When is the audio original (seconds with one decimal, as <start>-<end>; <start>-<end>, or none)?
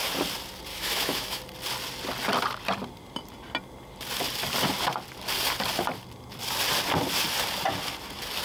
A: 0.0-0.7; 1.4-8.4